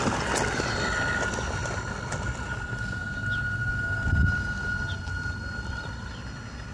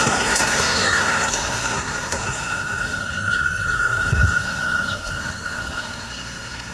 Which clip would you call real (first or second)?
first